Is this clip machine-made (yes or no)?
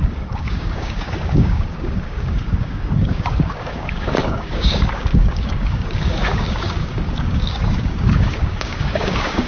yes